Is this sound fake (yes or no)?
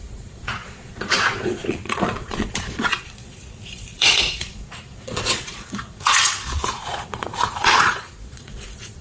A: yes